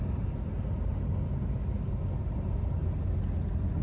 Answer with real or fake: real